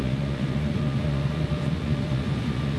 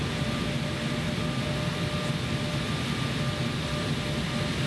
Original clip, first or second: second